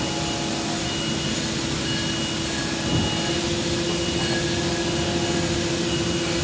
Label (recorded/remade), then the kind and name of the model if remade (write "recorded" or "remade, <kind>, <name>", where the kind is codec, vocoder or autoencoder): recorded